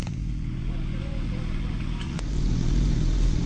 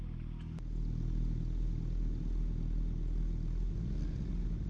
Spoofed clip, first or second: first